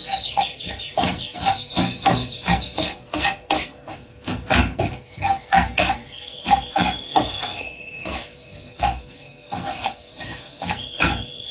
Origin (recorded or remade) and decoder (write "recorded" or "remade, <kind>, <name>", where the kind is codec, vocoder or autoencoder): remade, codec, SNAC